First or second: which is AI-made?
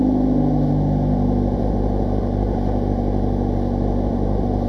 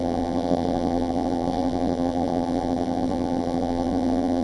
second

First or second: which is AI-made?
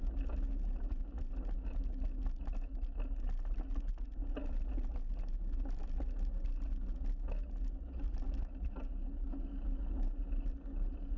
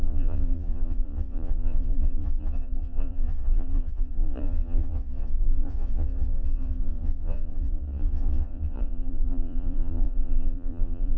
second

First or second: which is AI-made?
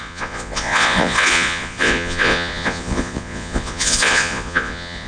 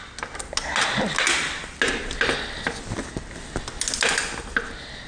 first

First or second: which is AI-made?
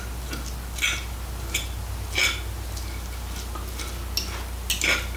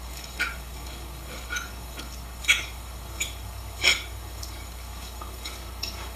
second